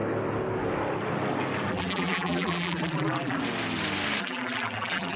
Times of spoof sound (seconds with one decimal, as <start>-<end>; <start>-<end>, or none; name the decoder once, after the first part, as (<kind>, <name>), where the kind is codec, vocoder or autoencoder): 1.7-3.4 (vocoder, BigVGAN v2); 4.2-5.2